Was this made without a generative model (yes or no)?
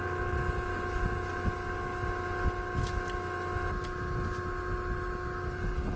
yes